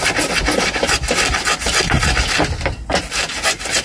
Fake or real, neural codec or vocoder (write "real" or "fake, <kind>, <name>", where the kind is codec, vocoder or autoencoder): real